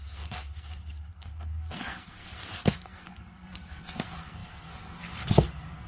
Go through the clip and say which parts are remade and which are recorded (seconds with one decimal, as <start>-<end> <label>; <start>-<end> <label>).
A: 0.0-5.9 remade